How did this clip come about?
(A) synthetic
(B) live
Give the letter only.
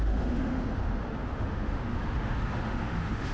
A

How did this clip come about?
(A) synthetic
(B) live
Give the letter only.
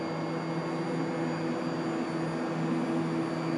B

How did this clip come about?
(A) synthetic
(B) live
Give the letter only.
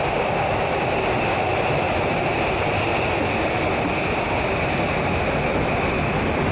B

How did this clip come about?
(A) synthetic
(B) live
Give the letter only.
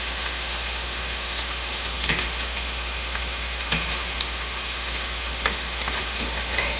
A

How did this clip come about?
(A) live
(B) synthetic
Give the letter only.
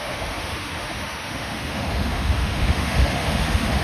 B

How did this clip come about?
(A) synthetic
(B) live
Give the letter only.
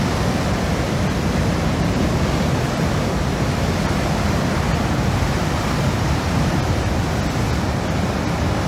B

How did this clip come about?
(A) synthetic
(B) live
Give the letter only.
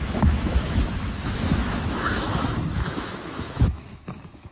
A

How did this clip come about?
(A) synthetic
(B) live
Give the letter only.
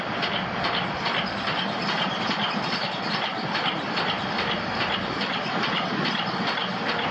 B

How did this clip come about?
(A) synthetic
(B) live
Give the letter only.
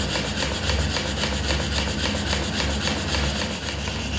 B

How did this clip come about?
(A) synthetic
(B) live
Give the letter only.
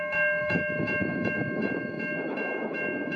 A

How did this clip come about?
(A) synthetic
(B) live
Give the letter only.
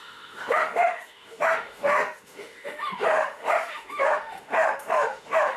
A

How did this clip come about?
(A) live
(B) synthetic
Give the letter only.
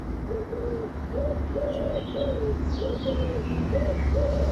B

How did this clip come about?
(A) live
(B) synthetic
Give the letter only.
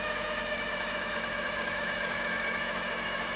B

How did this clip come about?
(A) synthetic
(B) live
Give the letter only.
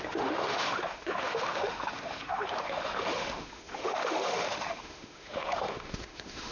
A